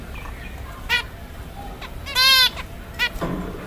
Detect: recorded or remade recorded